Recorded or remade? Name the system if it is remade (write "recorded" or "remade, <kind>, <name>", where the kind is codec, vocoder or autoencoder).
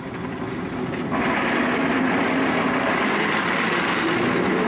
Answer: recorded